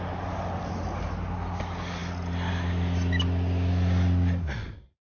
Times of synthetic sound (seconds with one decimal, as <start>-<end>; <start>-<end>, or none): none